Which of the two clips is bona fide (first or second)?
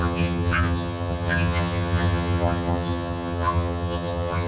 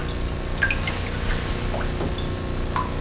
second